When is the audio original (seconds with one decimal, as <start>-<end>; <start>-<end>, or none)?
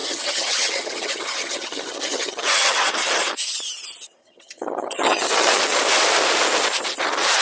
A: 2.9-4.2; 5.6-7.4